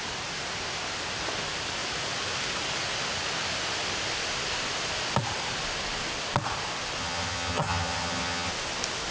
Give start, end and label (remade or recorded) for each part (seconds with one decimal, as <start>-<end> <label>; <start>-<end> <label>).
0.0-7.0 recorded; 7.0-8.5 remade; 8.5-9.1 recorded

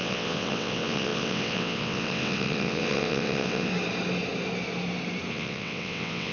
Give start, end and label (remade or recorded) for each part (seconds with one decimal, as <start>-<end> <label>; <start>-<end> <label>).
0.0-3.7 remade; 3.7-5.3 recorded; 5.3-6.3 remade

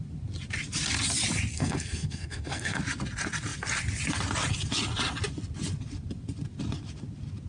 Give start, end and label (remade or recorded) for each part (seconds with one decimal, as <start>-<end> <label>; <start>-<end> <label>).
0.0-1.5 recorded; 1.5-2.8 remade; 2.8-7.5 recorded